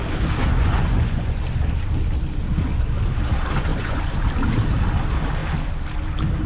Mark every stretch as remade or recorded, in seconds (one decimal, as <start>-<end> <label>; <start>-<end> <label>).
0.0-0.4 recorded; 0.4-1.4 remade; 1.4-3.7 recorded; 3.7-4.2 remade; 4.2-6.5 recorded